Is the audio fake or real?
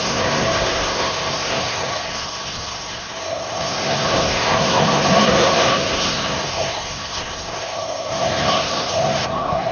fake